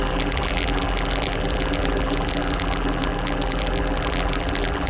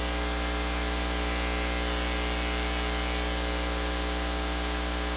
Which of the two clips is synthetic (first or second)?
first